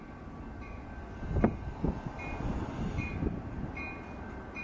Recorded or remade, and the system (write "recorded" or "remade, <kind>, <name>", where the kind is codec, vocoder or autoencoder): recorded